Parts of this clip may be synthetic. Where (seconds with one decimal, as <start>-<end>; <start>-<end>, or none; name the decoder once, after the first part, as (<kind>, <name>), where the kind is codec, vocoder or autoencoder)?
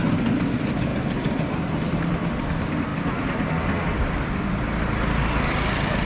0.9-1.7 (vocoder, BigVGAN v2); 2.9-5.6